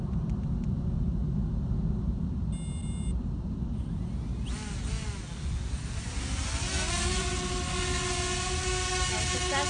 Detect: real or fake real